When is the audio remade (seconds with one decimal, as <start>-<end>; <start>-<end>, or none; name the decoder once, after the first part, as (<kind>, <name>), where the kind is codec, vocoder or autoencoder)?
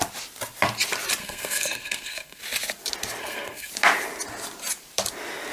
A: 1.2-2.4 (codec, SNAC); 3.2-3.7